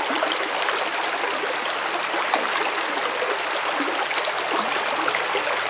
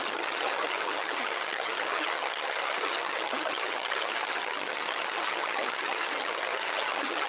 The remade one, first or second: second